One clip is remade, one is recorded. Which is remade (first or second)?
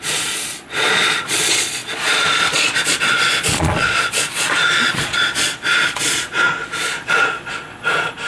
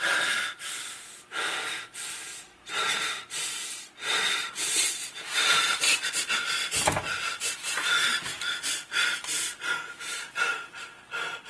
first